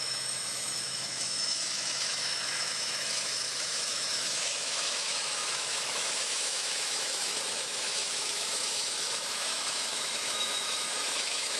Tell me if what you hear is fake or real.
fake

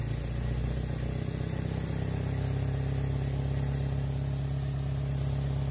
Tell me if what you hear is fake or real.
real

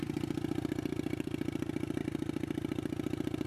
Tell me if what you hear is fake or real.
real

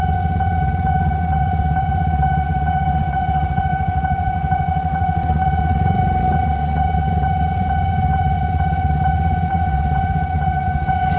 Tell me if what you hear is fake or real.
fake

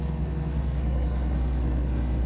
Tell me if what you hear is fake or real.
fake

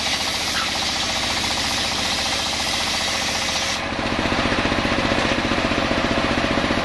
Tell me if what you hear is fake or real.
fake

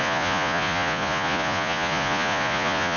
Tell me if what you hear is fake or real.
fake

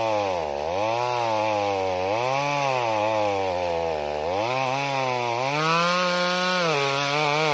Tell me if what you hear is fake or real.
real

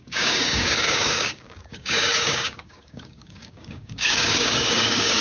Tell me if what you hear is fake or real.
fake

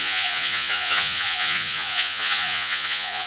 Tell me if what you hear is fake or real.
fake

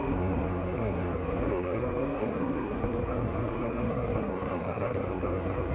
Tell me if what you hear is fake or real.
fake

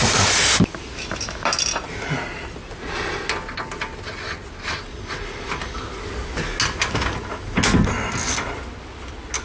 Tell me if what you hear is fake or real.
real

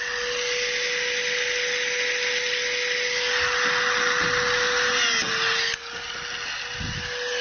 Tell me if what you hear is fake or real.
real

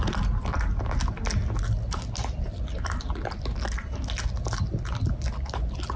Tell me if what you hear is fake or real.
real